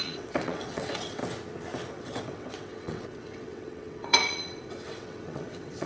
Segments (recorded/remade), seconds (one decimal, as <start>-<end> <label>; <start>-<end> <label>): 0.0-1.2 remade; 1.2-1.9 recorded; 1.9-5.9 remade